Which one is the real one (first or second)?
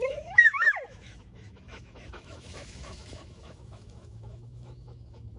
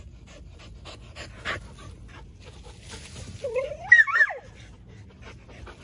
second